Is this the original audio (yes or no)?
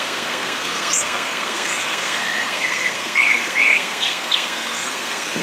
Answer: no